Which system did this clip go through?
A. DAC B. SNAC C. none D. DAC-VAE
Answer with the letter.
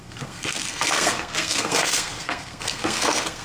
B